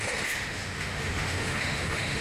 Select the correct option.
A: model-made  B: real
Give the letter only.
A